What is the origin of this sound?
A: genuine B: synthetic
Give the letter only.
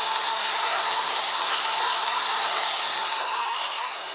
B